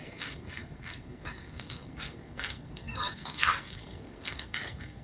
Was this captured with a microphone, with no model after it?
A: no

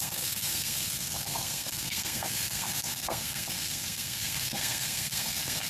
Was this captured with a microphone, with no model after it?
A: no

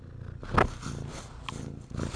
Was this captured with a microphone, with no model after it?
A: yes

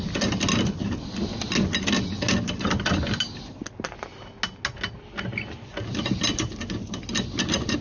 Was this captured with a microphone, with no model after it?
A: yes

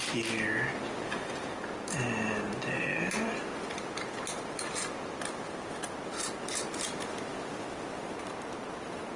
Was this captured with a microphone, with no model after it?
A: yes